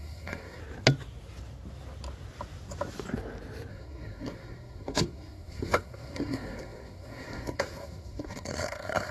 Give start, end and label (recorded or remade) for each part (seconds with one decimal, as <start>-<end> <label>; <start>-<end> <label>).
0.0-0.6 remade; 0.6-3.7 recorded; 3.7-9.1 remade